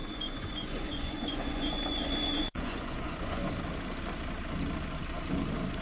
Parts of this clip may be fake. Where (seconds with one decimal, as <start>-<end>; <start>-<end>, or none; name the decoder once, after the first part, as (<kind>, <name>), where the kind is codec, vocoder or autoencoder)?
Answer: 0.0-3.5 (vocoder, Vocos)

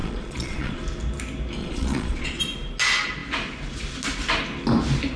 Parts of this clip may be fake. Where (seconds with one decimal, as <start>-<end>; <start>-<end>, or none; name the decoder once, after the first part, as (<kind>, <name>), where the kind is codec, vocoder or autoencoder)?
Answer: 0.0-0.8 (vocoder, Vocos); 1.6-2.4

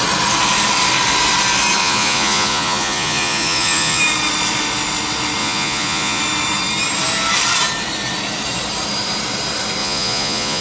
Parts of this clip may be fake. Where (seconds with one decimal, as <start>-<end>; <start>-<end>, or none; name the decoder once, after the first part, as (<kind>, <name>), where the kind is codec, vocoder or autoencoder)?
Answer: 1.8-4.0 (vocoder, Vocos); 5.4-6.2; 9.8-10.6

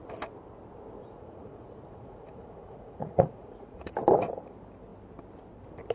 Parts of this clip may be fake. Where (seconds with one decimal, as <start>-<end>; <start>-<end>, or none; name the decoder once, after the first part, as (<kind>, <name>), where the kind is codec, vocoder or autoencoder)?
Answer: 1.0-3.9 (vocoder, Vocos)

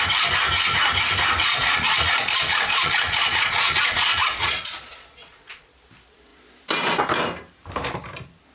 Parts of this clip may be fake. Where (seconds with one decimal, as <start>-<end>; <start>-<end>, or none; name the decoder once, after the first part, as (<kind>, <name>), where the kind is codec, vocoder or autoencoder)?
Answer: 1.4-5.7 (vocoder, Vocos)

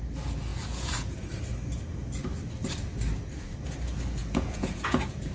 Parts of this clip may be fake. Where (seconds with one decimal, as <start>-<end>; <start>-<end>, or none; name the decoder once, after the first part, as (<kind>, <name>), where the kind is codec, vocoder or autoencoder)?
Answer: 0.5-1.2 (vocoder, Vocos); 4.2-5.3

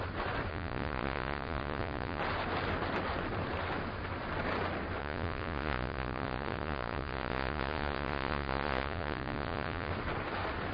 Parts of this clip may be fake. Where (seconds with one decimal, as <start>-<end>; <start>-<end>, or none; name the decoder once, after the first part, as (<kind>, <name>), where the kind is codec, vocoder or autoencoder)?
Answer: 0.5-2.2 (vocoder, Vocos); 5.0-9.9